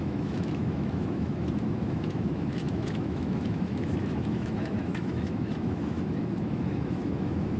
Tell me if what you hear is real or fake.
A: fake